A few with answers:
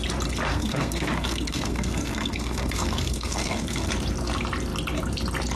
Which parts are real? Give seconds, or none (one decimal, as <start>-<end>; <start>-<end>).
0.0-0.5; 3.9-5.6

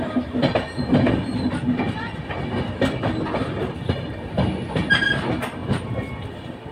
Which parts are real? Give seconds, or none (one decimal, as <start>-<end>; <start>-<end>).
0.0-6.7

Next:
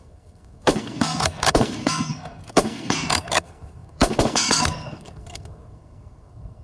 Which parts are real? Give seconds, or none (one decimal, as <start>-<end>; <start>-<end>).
none

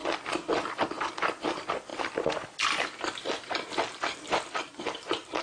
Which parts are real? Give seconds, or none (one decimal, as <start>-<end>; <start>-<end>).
0.0-5.4

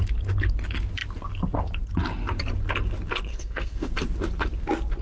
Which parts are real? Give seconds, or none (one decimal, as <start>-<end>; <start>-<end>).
0.0-3.3; 3.9-5.0

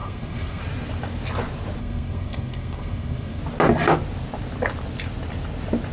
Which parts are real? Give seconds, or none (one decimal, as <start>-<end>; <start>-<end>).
0.6-1.8; 3.4-5.9

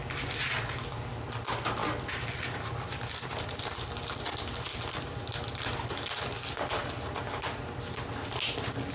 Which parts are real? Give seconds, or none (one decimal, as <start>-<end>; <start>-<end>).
0.0-8.9